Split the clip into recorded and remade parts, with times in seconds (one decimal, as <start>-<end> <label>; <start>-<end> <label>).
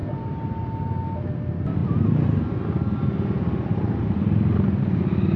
0.0-5.4 recorded